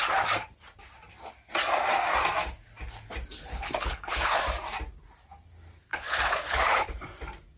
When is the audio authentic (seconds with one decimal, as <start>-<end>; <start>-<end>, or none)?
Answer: 0.0-3.5; 4.4-5.9; 7.0-7.6